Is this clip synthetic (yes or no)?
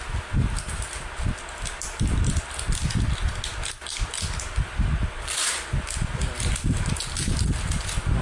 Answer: no